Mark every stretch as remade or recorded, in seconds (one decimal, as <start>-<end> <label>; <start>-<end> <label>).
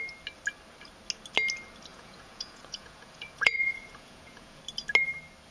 0.0-1.9 recorded; 1.9-4.6 remade; 4.6-5.5 recorded